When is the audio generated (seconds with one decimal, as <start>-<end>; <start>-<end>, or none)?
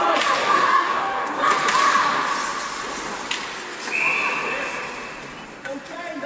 0.4-1.4